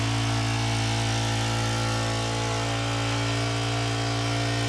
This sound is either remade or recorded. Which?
recorded